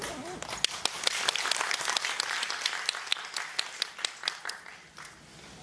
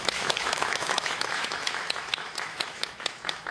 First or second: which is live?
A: first